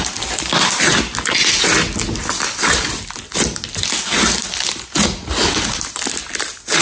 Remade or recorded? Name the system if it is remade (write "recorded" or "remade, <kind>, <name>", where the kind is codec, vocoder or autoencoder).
recorded